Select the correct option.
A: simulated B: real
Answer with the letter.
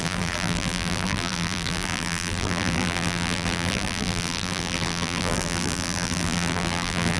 A